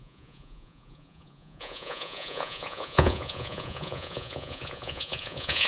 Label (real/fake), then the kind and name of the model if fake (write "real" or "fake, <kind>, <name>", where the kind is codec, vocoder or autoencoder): fake, vocoder, Vocos